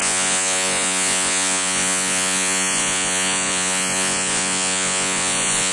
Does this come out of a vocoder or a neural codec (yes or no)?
yes